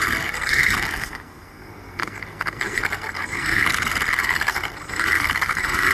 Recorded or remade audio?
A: remade